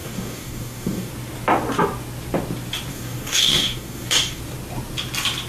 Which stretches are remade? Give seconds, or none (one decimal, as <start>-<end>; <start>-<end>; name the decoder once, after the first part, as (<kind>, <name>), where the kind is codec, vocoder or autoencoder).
0.0-1.1 (codec, DAC); 2.9-4.4